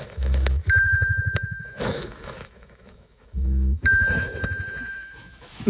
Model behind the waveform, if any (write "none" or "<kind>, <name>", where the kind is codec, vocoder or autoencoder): autoencoder, DAC-VAE